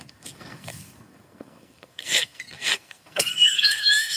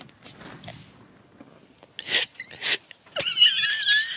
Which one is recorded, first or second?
second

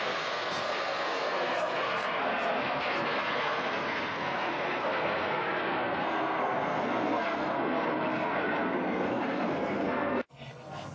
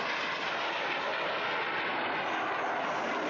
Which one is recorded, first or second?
second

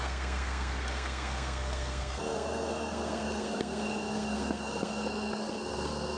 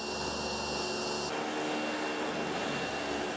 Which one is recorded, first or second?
second